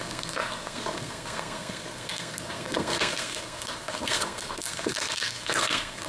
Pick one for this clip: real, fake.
fake